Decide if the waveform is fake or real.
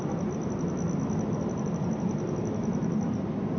real